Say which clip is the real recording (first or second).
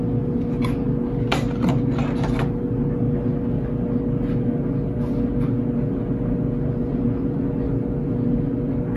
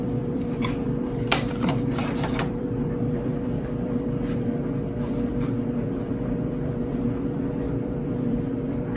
first